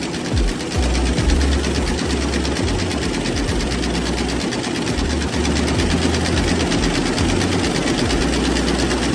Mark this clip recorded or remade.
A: recorded